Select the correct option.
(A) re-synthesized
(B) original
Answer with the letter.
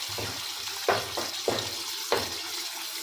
B